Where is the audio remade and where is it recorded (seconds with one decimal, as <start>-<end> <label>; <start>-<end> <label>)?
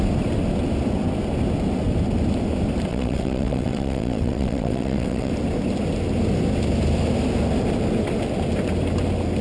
0.0-2.9 recorded; 2.9-5.3 remade; 5.3-9.4 recorded